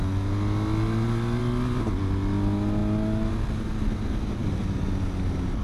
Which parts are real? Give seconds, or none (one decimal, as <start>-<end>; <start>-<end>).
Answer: 0.0-5.6